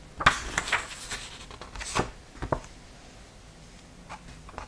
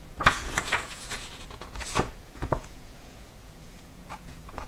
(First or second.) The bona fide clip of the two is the first